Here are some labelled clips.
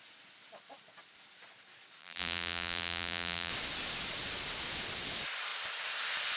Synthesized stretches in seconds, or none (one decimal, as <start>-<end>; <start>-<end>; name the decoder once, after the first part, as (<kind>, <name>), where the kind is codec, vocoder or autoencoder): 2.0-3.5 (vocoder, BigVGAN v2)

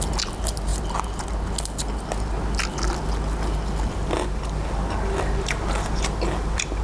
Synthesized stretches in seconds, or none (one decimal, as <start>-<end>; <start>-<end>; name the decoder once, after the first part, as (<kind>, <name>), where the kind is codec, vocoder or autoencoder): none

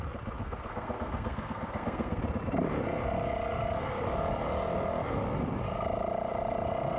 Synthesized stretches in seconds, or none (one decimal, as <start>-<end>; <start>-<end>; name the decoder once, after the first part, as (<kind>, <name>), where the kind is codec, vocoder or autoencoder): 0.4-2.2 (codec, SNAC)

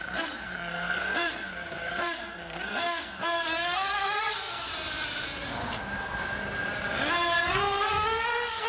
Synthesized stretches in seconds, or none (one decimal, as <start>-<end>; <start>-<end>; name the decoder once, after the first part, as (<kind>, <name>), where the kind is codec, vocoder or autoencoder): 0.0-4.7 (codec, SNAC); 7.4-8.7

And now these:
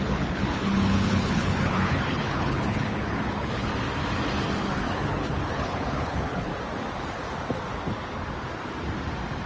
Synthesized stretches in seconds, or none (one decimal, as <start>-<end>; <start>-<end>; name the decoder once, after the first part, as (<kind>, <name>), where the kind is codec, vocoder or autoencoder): 0.0-3.7 (codec, HILCodec); 4.6-6.5

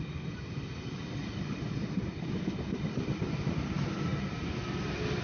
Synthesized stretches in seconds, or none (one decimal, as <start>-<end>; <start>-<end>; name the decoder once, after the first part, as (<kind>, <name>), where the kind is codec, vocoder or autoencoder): none

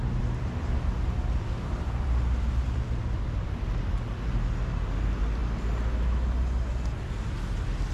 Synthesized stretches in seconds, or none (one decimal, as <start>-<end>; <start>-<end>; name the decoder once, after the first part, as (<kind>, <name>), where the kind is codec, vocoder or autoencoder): 0.0-3.0 (vocoder, BigVGAN v2)